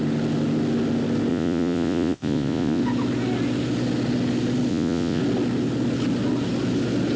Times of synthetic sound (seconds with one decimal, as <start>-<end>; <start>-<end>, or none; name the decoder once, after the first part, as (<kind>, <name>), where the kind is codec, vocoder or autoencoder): 1.3-2.8 (vocoder, Vocos); 4.7-5.2